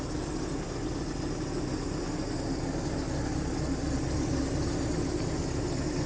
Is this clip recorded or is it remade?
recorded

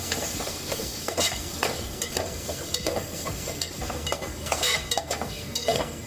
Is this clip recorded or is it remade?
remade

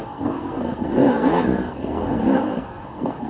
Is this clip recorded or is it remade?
remade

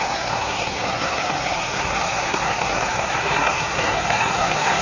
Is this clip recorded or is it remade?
remade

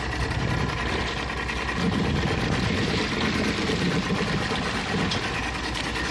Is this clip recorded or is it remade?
recorded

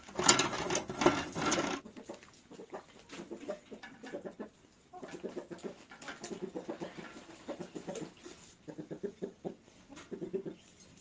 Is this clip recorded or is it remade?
recorded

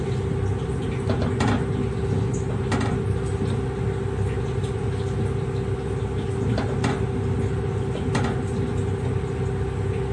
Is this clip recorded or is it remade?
recorded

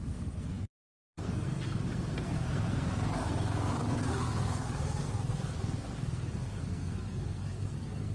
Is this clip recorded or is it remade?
remade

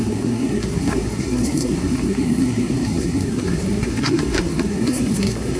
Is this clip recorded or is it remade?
remade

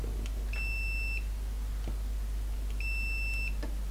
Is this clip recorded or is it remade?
recorded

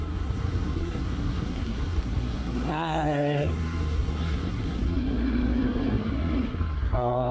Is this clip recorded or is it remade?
remade